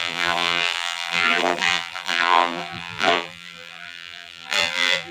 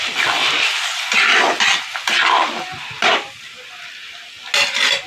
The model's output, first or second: first